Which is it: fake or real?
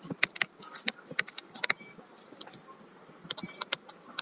real